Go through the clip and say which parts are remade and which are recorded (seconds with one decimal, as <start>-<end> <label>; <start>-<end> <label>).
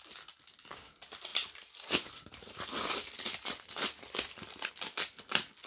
0.0-5.7 recorded